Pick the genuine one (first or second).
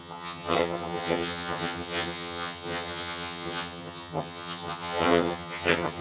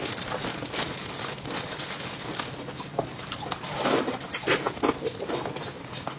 second